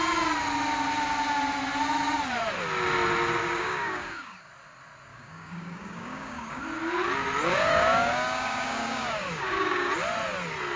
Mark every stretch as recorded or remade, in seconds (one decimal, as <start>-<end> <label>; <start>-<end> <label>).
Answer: 0.0-3.4 recorded; 3.4-4.5 remade; 4.5-5.1 recorded; 5.1-6.6 remade; 6.6-7.5 recorded; 7.5-9.9 remade; 9.9-10.8 recorded